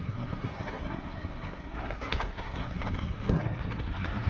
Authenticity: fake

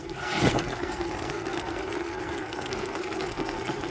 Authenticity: fake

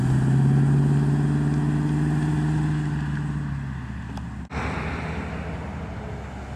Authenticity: real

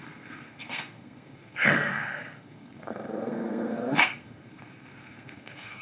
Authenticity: fake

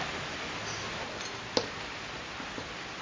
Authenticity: real